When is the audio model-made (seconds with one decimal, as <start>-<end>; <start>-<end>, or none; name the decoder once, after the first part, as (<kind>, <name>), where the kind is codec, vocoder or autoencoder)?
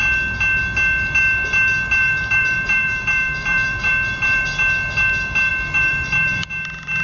2.0-4.4 (vocoder, BigVGAN v2); 5.5-6.5